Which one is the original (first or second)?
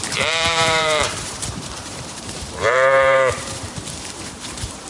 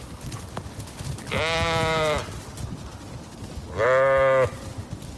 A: second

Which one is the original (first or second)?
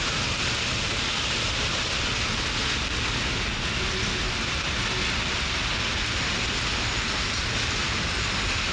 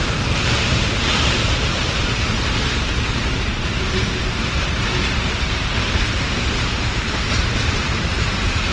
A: first